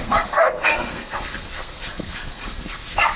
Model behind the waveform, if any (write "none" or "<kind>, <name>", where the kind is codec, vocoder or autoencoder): codec, SNAC